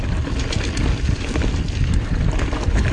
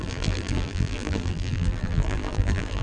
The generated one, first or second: second